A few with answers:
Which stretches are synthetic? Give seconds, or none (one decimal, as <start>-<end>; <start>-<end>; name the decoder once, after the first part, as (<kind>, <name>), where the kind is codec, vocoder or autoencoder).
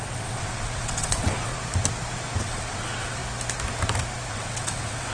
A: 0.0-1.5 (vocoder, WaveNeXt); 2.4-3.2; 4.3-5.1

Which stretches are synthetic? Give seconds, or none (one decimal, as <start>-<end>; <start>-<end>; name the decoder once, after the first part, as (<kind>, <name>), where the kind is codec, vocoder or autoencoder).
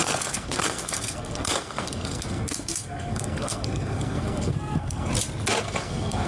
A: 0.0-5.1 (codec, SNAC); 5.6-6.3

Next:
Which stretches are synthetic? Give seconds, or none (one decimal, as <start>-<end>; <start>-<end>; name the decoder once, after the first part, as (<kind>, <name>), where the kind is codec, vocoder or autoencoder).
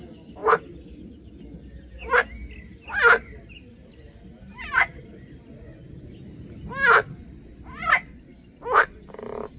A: none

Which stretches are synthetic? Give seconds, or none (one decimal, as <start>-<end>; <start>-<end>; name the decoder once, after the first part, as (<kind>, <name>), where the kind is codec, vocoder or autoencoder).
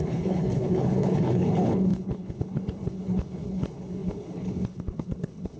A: 0.0-5.6 (codec, HILCodec)